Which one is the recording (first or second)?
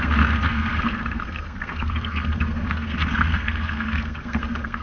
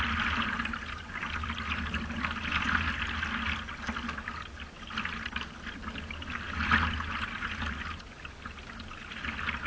second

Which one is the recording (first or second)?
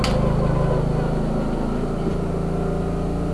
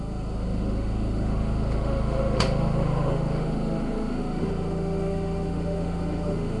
first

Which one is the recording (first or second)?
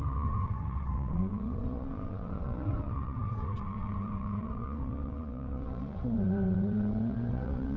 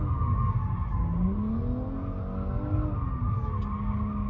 second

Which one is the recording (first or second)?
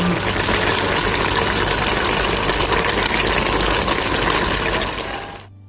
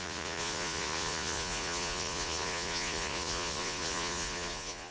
first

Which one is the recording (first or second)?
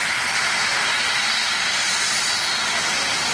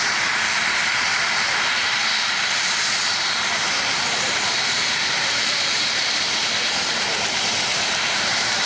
first